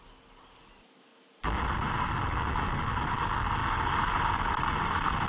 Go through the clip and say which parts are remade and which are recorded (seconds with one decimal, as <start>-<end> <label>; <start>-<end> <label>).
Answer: 0.0-5.3 recorded